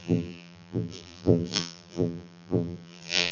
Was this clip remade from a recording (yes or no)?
yes